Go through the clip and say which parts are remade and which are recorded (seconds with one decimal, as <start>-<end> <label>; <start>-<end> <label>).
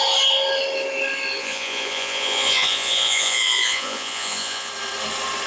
0.0-1.4 recorded; 1.4-4.7 remade; 4.7-5.5 recorded